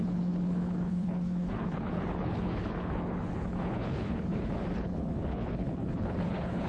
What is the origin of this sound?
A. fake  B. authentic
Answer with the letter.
A